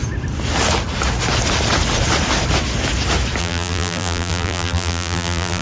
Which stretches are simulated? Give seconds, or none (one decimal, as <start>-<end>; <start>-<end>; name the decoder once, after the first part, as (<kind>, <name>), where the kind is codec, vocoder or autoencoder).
3.4-5.6 (vocoder, BigVGAN v2)